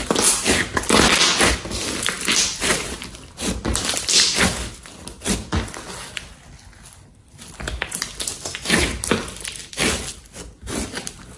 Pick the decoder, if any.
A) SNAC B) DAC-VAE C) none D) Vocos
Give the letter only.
C